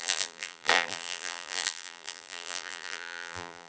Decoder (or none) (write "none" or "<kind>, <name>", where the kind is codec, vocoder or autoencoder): vocoder, BigVGAN v2